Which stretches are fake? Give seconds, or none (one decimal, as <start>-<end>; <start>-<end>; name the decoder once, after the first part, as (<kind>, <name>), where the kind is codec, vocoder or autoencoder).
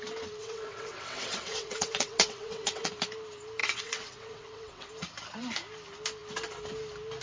0.4-2.9 (vocoder, WaveNeXt); 3.6-4.9